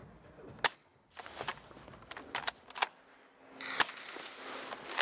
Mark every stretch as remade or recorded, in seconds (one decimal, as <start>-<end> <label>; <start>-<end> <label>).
0.0-5.0 recorded